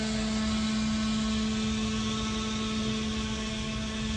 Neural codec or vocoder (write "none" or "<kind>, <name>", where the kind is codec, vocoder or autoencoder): none